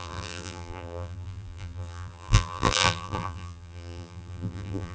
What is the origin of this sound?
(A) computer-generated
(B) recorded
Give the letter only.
A